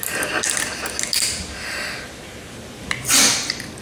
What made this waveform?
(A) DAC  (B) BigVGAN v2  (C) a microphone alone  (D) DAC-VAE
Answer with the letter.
C